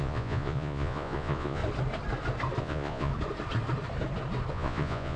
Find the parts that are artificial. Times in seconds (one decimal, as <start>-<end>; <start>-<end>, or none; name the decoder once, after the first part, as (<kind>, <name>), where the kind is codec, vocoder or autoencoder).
0.0-1.6 (vocoder, Vocos); 2.6-3.1; 4.5-5.2